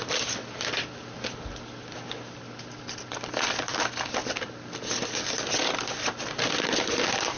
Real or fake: real